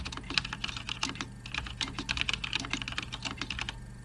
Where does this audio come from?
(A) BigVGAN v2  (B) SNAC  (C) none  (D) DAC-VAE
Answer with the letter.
C